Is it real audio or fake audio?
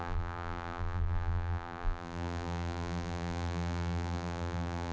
fake